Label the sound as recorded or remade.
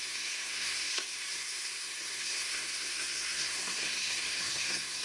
remade